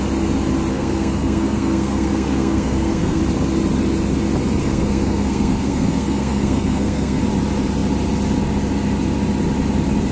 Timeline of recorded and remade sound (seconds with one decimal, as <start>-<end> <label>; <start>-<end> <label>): 0.0-0.7 recorded; 0.7-3.2 remade; 3.2-4.6 recorded; 4.6-7.2 remade; 7.2-10.1 recorded